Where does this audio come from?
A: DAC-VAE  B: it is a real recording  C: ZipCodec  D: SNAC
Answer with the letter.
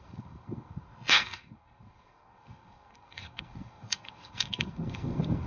D